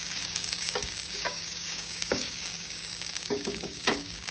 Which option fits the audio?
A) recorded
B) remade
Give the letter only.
B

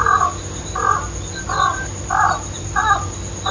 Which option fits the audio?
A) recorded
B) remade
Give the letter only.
A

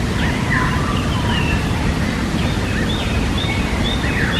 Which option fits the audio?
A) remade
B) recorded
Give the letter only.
B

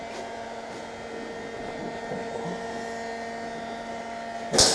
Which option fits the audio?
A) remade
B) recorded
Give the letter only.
B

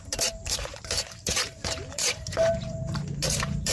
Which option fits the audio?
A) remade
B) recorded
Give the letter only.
A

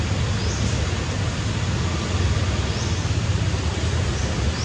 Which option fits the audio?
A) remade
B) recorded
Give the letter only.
B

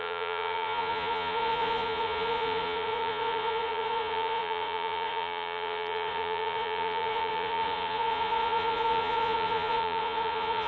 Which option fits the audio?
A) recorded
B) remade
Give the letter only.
B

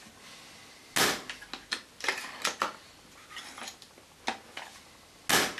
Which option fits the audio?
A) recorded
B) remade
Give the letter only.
A